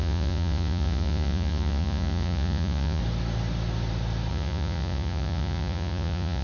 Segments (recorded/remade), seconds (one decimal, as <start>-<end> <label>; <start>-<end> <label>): 0.0-3.0 remade; 3.0-4.3 recorded; 4.3-6.4 remade